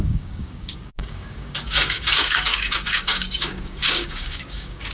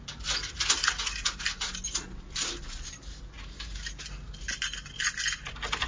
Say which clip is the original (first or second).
second